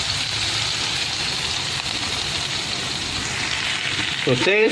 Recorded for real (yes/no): no